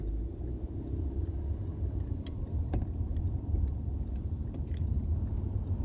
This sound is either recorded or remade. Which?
recorded